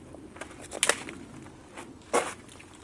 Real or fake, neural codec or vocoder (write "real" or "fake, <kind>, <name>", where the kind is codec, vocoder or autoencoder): real